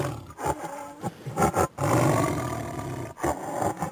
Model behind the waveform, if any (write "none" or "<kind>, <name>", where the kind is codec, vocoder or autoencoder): none